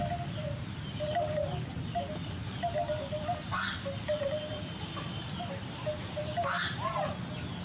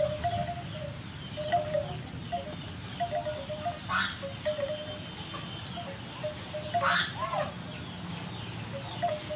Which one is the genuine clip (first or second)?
second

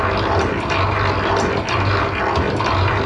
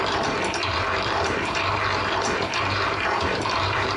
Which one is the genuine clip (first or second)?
first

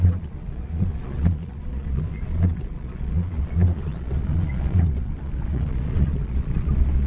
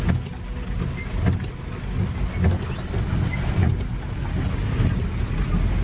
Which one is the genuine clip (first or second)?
second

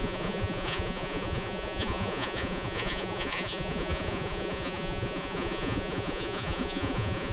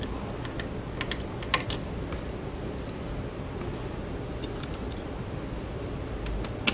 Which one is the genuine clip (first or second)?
second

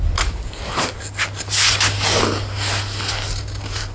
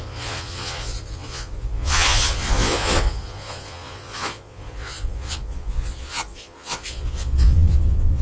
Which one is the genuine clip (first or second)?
first